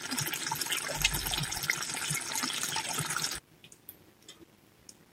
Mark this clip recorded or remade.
recorded